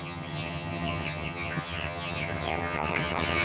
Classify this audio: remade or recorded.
remade